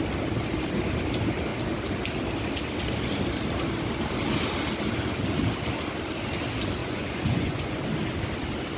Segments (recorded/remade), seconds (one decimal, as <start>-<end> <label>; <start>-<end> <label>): 0.0-6.8 recorded; 6.8-7.8 remade; 7.8-8.8 recorded